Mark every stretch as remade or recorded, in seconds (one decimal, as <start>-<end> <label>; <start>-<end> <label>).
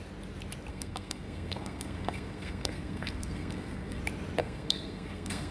0.0-0.7 recorded; 0.7-4.0 remade; 4.0-4.4 recorded; 4.4-5.5 remade